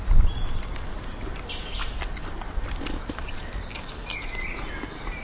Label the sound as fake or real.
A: real